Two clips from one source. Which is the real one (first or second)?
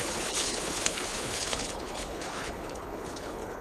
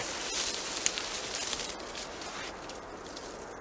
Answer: second